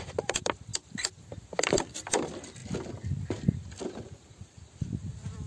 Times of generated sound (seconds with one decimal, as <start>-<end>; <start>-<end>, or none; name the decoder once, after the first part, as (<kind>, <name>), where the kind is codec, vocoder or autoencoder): 0.0-0.7 (vocoder, BigVGAN v2); 1.7-2.6; 4.4-5.5